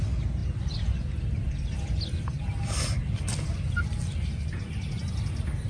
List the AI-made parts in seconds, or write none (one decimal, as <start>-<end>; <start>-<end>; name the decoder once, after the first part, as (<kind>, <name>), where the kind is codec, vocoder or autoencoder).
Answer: none